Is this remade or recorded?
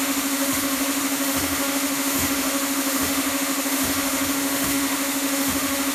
remade